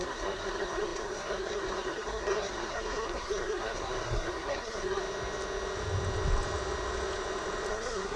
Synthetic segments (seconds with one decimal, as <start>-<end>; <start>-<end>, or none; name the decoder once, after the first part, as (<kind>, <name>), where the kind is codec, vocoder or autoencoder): 0.0-5.0 (codec, SNAC); 7.7-8.2

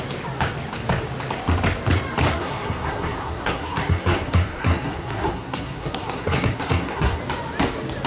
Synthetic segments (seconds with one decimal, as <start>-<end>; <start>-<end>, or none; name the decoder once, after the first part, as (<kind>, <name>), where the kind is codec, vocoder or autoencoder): 2.3-7.2 (codec, SNAC)

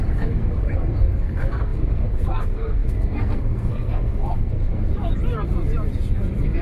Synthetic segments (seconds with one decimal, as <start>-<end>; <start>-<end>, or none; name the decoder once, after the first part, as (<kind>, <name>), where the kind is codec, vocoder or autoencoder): 0.0-4.9 (codec, SNAC)

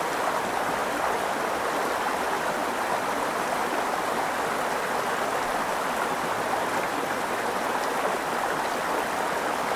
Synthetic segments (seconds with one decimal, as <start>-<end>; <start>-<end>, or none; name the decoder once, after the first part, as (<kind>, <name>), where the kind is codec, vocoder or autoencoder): none

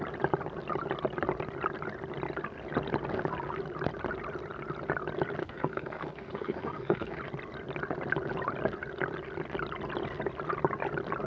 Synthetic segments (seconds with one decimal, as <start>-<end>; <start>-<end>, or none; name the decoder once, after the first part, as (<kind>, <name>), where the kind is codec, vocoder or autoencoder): 5.4-7.2 (codec, SNAC)

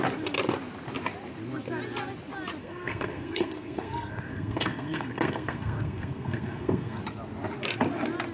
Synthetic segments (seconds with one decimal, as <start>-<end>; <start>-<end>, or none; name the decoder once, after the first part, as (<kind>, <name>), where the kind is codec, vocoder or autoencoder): 2.6-7.0 (codec, SNAC)